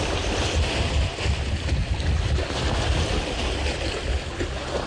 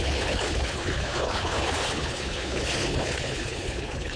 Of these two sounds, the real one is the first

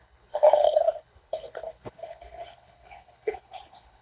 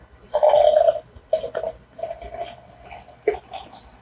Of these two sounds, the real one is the second